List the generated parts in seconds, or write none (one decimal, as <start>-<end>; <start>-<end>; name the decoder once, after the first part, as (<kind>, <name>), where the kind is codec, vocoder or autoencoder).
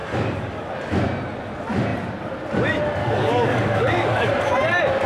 0.0-0.7 (codec, DAC); 3.0-4.3